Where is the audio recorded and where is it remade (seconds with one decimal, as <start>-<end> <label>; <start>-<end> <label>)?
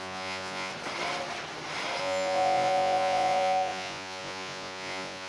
0.0-0.7 remade; 0.7-2.0 recorded; 2.0-5.3 remade